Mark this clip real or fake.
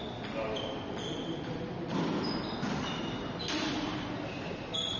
real